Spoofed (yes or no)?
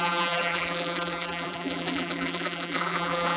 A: yes